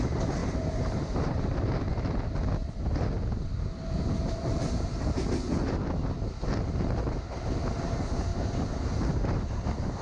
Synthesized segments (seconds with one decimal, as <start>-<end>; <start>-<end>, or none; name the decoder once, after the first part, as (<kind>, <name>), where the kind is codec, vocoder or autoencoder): 0.4-1.4 (vocoder, BigVGAN v2); 8.3-9.4

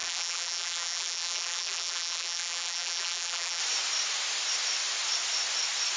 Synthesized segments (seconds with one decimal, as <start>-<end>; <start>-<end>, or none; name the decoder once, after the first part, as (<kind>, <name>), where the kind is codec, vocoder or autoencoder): 0.0-3.6 (vocoder, BigVGAN v2)

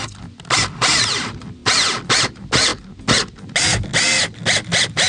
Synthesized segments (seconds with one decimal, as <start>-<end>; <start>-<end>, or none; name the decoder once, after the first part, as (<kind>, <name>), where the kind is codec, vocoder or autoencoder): 0.0-1.6 (vocoder, BigVGAN v2); 2.2-2.7; 4.0-5.1

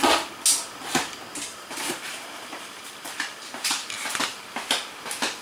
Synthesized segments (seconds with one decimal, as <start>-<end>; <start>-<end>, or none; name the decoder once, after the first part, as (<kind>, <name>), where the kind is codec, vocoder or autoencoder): 1.5-4.2 (vocoder, BigVGAN v2)

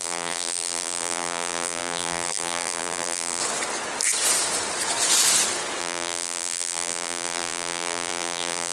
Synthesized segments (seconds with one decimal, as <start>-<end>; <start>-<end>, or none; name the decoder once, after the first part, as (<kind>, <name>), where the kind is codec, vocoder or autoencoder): 0.0-3.4 (vocoder, BigVGAN v2); 5.8-8.7

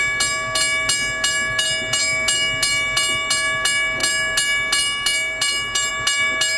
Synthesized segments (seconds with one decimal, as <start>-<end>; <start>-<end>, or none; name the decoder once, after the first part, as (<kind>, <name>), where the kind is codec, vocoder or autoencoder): none

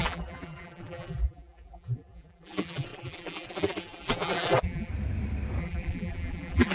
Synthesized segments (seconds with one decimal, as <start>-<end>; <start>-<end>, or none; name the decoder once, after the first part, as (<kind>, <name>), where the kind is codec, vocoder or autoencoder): 0.0-4.9 (vocoder, BigVGAN v2); 5.6-6.7

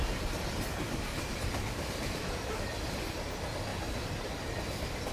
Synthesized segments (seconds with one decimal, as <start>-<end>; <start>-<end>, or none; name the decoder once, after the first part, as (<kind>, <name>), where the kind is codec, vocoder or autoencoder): 1.1-2.2 (vocoder, BigVGAN v2); 3.7-4.4